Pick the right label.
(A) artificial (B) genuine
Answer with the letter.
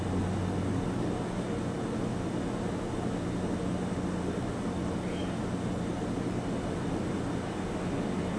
B